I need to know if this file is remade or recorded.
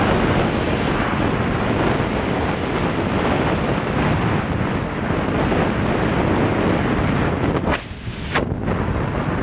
recorded